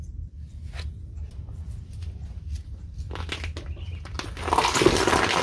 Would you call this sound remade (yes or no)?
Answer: no